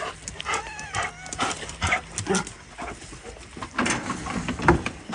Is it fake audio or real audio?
real